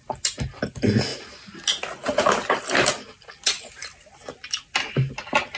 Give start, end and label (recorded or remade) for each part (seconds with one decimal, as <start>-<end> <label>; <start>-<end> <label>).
0.0-5.6 recorded